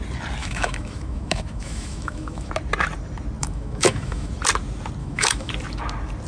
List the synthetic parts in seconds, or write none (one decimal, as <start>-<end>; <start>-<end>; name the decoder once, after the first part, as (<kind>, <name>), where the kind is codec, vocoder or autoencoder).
0.4-2.5 (autoencoder, DAC-VAE); 3.4-4.3; 5.0-5.5